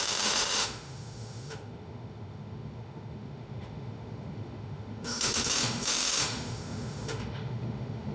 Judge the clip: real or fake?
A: fake